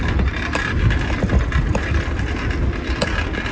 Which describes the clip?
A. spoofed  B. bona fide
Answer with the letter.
B